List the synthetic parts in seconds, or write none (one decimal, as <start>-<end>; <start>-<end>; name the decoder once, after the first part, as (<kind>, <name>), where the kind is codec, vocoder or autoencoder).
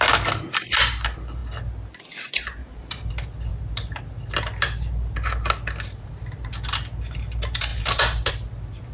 2.6-3.1 (vocoder, BigVGAN v2)